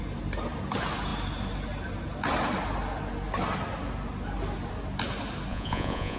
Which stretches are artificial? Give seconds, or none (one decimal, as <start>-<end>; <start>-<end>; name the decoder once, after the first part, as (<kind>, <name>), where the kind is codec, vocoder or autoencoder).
5.5-6.2 (vocoder, Vocos)